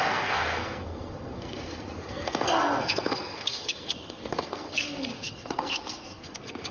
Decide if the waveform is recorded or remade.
remade